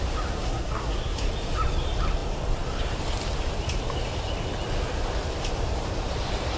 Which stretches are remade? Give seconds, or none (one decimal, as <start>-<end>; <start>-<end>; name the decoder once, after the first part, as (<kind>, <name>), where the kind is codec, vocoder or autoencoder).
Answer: 0.4-1.3 (codec, SNAC)